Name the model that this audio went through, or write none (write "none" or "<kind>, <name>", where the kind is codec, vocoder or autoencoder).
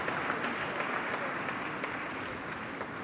none